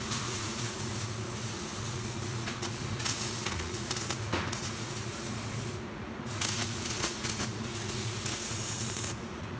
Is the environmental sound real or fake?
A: fake